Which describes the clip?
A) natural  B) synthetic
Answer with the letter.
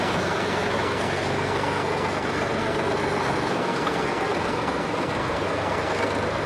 B